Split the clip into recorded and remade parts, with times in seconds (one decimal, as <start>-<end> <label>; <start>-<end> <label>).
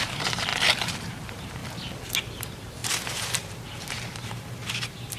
0.0-0.5 remade; 0.5-1.1 recorded; 1.1-1.6 remade; 1.6-2.4 recorded; 2.4-5.2 remade